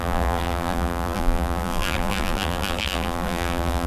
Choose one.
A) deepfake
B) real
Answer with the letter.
A